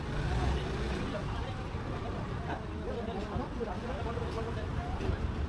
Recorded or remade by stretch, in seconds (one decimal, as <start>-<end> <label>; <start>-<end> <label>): 0.0-1.2 recorded; 1.2-2.4 remade; 2.4-4.7 recorded; 4.7-5.5 remade